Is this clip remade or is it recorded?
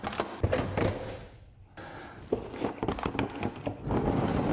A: recorded